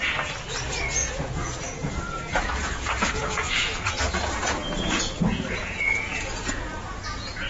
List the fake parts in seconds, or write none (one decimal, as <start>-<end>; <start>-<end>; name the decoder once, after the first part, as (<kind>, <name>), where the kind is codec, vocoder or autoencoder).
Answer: 0.0-7.5 (vocoder, Vocos)